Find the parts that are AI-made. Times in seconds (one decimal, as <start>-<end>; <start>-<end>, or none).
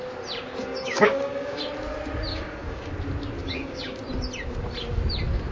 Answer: 0.6-1.6; 2.3-2.9; 3.4-4.0